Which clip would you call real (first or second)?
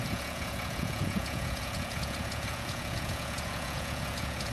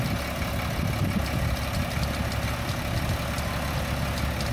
second